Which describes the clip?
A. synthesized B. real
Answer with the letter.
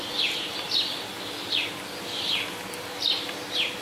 B